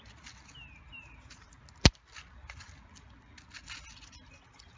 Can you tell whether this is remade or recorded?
recorded